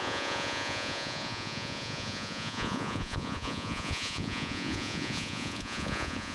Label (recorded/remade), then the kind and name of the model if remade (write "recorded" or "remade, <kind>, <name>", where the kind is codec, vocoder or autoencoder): remade, vocoder, Vocos